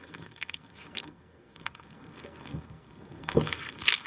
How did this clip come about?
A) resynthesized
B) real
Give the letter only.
A